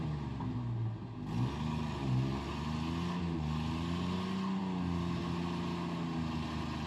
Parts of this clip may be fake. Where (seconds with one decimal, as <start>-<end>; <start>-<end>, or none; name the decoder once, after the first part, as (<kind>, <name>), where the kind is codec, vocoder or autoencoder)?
none